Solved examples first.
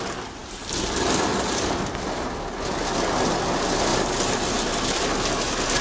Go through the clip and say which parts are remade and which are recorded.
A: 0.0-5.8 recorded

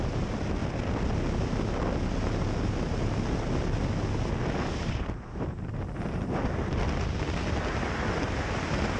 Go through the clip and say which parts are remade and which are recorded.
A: 0.0-4.8 recorded; 4.8-6.3 remade; 6.3-9.0 recorded

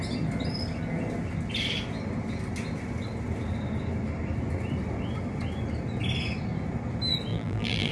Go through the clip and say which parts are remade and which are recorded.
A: 0.0-7.3 recorded; 7.3-7.9 remade

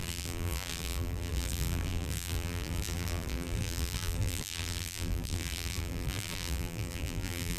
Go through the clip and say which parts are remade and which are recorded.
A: 0.0-7.6 remade